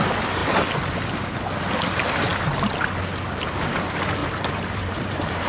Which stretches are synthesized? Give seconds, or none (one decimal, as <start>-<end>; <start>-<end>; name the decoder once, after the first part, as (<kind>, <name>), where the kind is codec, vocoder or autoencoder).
4.2-5.5 (vocoder, BigVGAN v2)